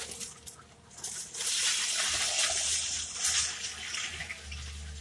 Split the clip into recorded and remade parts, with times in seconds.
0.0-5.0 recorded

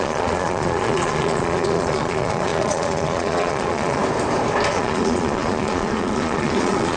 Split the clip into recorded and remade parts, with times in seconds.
0.0-4.0 remade; 4.0-4.7 recorded; 4.7-7.0 remade

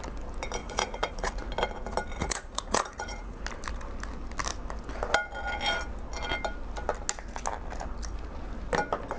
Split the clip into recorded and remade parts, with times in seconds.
0.0-0.6 recorded; 0.6-1.3 remade; 1.3-2.2 recorded; 2.2-3.4 remade; 3.4-9.2 recorded

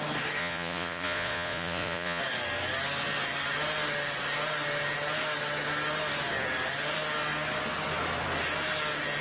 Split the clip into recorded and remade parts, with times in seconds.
0.0-0.4 recorded; 0.4-2.2 remade; 2.2-9.2 recorded

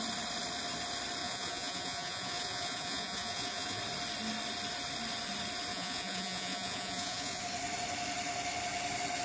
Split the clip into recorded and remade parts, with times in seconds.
0.0-1.2 recorded; 1.2-3.8 remade; 3.8-5.7 recorded; 5.7-7.4 remade; 7.4-9.2 recorded